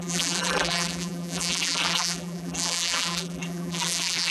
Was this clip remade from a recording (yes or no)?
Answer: yes